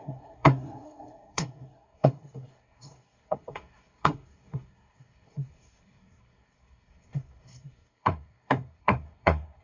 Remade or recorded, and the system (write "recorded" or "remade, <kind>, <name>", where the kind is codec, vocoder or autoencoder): remade, codec, SNAC